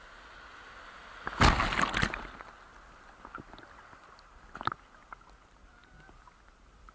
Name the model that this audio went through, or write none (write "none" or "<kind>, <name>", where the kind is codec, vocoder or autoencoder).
none